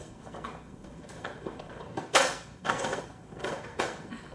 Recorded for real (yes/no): no